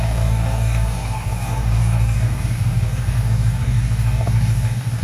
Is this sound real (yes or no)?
no